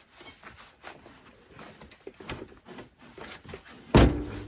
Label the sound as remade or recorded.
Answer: recorded